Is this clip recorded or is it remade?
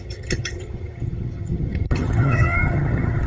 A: remade